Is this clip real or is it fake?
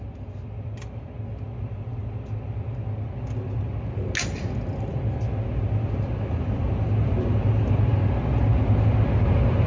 real